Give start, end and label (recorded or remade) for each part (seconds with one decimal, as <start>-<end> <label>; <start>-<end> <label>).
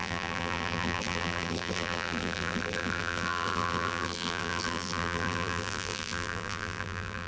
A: 0.0-7.3 remade